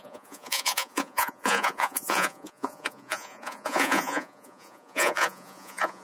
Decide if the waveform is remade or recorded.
remade